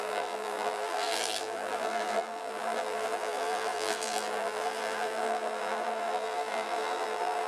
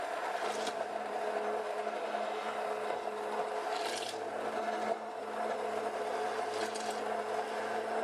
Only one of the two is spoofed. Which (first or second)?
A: first